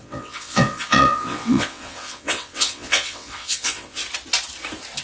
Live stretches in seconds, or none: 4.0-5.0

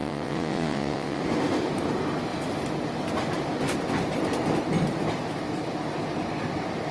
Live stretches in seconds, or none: 1.2-6.9